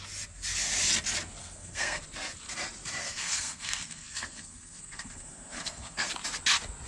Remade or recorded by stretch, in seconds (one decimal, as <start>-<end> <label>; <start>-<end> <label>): 0.0-1.4 recorded; 1.4-2.0 remade; 2.0-3.0 recorded; 3.0-6.1 remade; 6.1-6.9 recorded

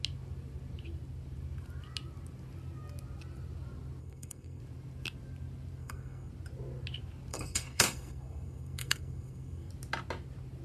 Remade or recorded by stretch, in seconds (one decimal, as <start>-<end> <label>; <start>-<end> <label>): 0.0-4.0 recorded; 4.0-4.6 remade; 4.6-5.8 recorded; 5.8-6.3 remade; 6.3-7.3 recorded; 7.3-9.7 remade; 9.7-10.6 recorded